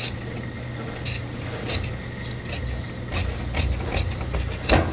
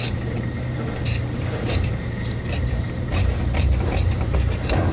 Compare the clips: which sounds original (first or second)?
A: first